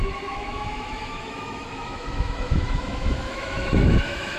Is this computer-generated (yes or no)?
yes